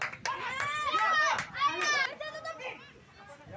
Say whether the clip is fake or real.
real